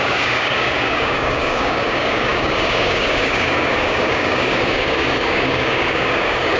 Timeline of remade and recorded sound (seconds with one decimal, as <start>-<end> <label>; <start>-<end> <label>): 0.0-6.6 remade